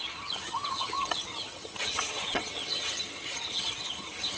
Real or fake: fake